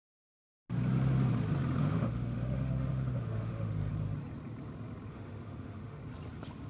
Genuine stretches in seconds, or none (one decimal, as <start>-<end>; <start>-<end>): 0.0-1.8; 3.9-5.1; 6.0-6.7